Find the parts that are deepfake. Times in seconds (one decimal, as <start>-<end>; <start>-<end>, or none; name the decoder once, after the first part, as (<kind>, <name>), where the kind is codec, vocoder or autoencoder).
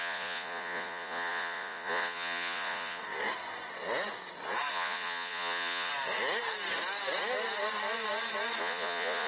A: 0.0-3.0 (vocoder, Vocos); 4.7-5.9; 8.6-9.3